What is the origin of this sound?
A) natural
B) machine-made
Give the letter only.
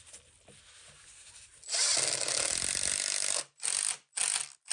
A